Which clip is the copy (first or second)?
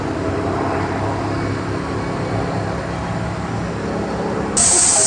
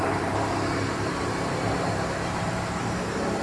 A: second